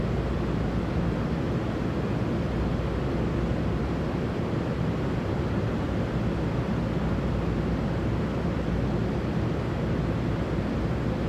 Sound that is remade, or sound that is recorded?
recorded